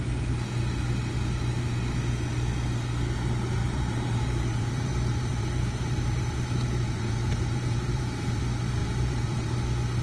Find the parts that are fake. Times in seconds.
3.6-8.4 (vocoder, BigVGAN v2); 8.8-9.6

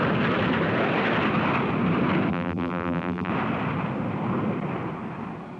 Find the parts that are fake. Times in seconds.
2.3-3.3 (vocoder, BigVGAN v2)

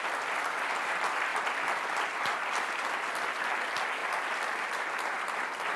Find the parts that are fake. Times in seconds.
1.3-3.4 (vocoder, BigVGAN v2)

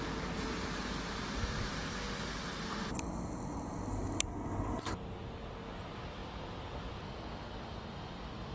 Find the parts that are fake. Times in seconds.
none

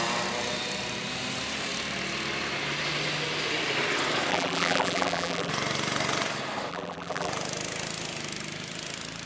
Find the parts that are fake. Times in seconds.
4.3-5.5 (vocoder, BigVGAN v2); 6.7-7.3

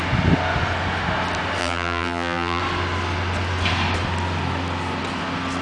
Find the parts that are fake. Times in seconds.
1.6-2.6 (vocoder, BigVGAN v2)

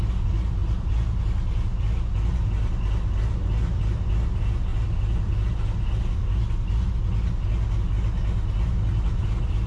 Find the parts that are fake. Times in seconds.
0.6-1.2 (vocoder, BigVGAN v2); 4.7-5.3

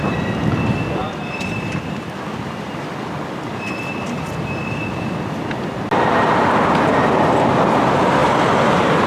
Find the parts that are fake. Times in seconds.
1.0-5.2 (vocoder, BigVGAN v2)